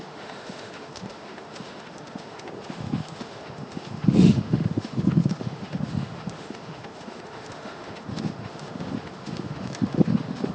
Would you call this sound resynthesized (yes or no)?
yes